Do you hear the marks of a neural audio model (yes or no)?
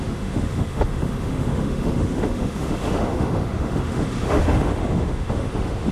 yes